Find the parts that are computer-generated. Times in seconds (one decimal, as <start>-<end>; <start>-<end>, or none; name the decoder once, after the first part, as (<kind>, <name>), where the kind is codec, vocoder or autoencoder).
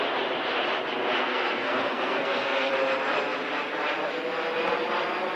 1.2-2.7 (codec, SNAC)